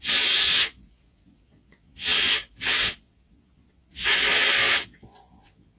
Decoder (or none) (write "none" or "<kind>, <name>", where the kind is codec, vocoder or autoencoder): vocoder, Vocos